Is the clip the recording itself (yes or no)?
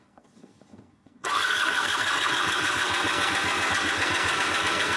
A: no